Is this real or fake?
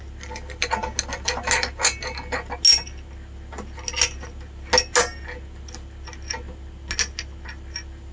real